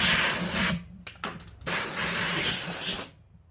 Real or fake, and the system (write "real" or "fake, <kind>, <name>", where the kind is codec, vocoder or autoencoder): real